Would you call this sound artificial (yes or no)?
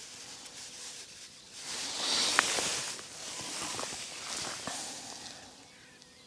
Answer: no